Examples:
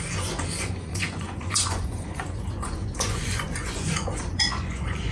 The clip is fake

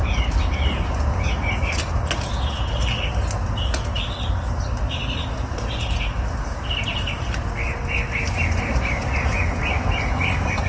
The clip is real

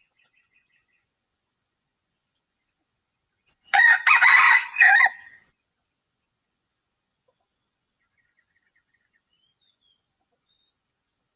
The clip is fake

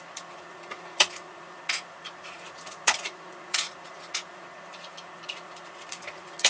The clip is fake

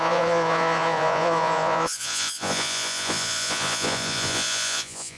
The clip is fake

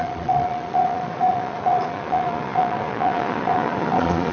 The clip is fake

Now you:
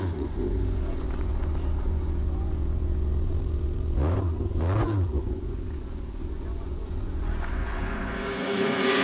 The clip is fake